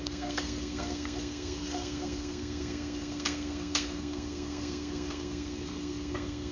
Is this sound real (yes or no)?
no